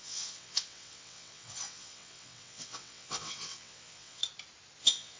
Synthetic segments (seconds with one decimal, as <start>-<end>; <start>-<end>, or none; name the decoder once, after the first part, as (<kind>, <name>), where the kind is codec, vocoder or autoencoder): 0.0-4.2 (vocoder, WaveNeXt); 4.8-5.2